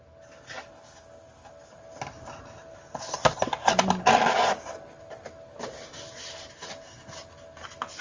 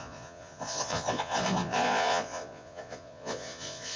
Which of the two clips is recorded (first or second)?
first